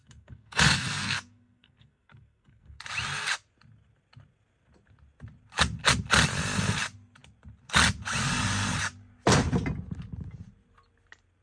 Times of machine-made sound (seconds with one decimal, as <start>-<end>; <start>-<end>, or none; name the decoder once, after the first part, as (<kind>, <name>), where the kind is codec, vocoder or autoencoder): 0.0-2.8 (codec, SNAC)